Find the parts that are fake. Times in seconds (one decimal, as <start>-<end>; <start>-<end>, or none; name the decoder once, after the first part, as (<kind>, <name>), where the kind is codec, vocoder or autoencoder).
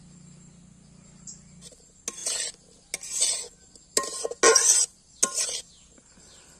none